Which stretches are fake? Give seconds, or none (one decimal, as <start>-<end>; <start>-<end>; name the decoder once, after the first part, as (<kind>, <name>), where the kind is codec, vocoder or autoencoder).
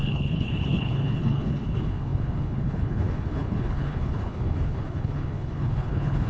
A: 0.0-6.3 (codec, HILCodec)